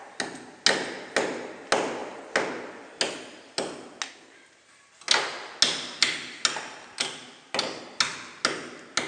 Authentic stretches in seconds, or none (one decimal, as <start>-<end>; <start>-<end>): 0.0-9.1